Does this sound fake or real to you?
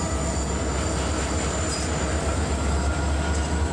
real